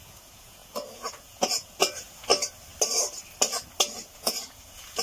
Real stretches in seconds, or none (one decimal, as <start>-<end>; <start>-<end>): 2.3-4.2